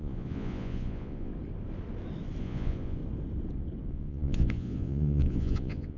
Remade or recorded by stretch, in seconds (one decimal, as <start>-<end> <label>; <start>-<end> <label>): 0.0-1.3 remade; 1.3-2.4 recorded; 2.4-3.0 remade; 3.0-3.9 recorded; 3.9-6.0 remade